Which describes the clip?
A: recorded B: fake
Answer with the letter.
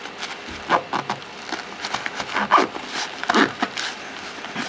A